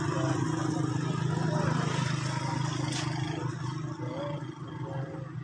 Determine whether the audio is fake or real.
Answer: real